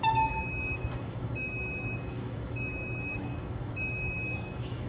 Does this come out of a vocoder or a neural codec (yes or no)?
yes